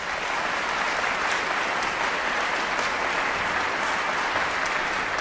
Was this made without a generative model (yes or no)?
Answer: yes